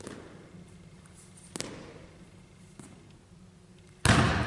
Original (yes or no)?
yes